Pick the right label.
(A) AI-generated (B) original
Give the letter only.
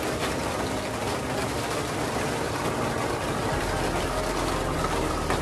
B